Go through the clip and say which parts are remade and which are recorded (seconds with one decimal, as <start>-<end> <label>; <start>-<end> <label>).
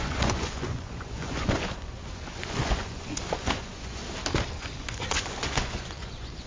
0.0-4.0 remade; 4.0-4.6 recorded; 4.6-6.5 remade